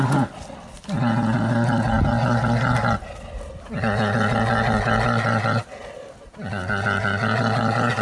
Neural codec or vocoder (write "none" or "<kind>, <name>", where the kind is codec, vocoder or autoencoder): none